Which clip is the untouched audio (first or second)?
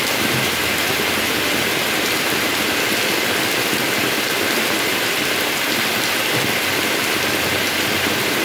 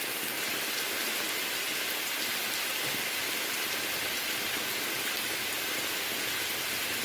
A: second